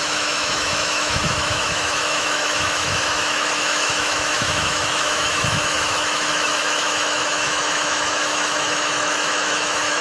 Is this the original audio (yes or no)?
no